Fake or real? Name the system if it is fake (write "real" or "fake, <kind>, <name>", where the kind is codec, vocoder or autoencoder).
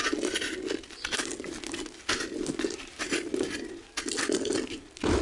real